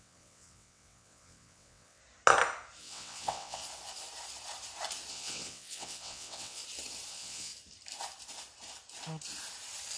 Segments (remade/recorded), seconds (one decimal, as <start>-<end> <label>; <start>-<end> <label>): 0.0-2.0 remade; 2.0-2.8 recorded; 2.8-3.6 remade; 3.6-5.1 recorded; 5.1-6.6 remade; 6.6-7.1 recorded; 7.1-7.5 remade; 7.5-10.0 recorded